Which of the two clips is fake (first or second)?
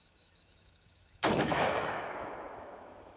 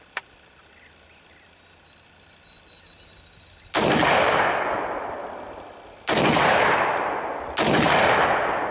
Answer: first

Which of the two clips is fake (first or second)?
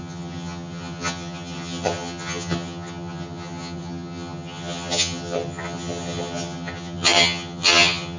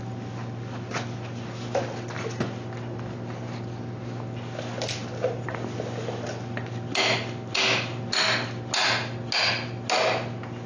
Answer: first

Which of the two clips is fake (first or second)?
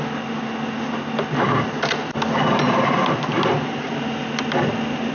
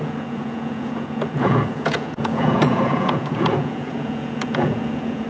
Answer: second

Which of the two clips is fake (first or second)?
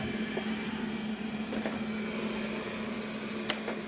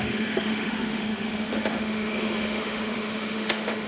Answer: second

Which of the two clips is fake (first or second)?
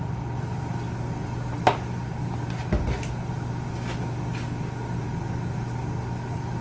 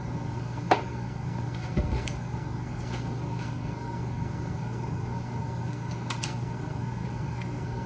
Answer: second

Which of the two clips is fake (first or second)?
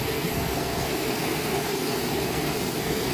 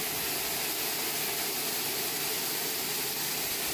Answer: first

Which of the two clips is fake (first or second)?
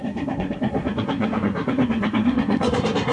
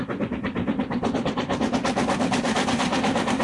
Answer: first